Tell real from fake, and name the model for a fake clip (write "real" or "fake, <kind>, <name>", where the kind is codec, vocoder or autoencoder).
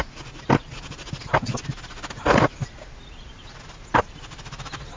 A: real